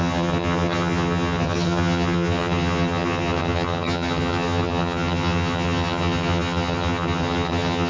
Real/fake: fake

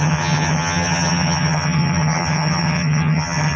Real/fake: fake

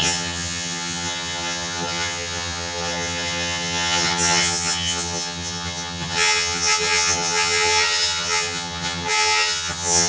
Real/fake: fake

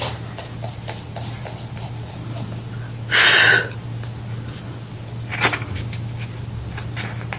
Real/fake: real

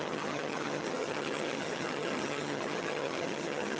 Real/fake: fake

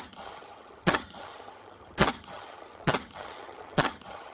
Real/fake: fake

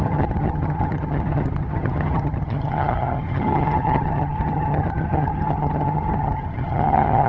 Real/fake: fake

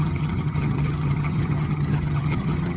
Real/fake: fake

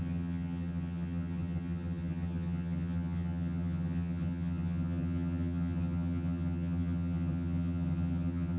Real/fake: fake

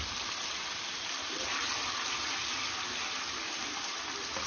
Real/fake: real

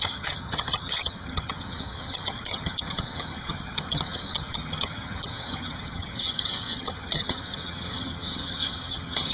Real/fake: fake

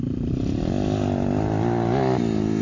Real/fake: real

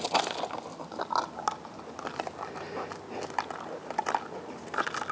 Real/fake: real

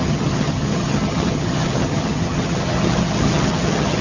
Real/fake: fake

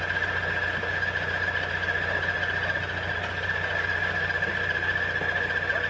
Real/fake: real